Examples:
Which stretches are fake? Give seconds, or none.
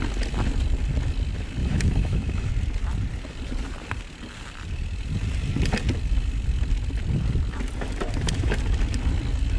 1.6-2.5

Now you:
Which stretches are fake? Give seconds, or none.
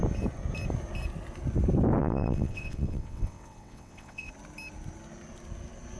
2.0-4.3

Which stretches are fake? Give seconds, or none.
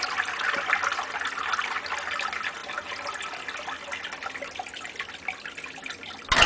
none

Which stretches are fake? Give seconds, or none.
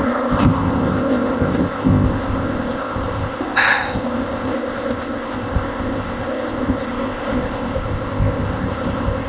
0.0-9.3